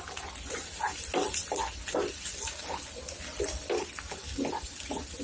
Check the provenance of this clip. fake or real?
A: real